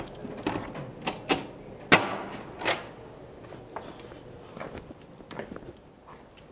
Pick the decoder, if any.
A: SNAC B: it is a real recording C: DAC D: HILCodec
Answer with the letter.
B